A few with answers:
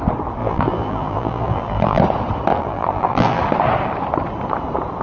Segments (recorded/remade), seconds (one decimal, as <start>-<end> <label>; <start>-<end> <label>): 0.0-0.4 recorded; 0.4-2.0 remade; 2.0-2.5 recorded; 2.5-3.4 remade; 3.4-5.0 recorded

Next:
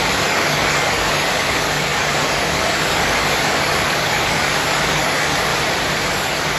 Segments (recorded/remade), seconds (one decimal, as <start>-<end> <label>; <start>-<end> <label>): 0.0-5.5 remade; 5.5-6.1 recorded; 6.1-6.6 remade

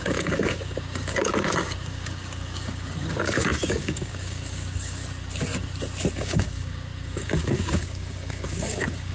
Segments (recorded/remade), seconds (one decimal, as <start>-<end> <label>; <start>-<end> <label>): 0.0-5.0 remade; 5.0-6.1 recorded; 6.1-9.1 remade

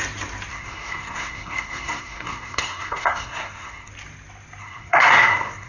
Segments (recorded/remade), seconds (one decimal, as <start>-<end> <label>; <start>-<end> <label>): 0.0-0.5 recorded; 0.5-3.9 remade; 3.9-4.6 recorded; 4.6-5.7 remade

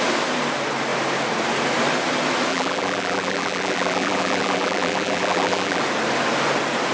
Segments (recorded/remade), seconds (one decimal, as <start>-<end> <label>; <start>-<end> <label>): 0.0-2.5 recorded; 2.5-5.8 remade; 5.8-6.9 recorded

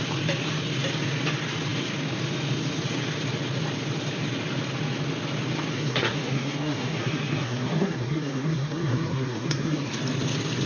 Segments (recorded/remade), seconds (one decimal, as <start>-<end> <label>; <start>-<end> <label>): 0.0-5.7 recorded; 5.7-10.0 remade; 10.0-10.7 recorded

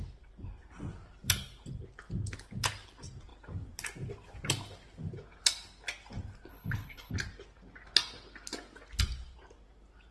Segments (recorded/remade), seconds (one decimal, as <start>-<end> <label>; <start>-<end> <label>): 0.0-6.5 recorded; 6.5-7.1 remade; 7.1-10.1 recorded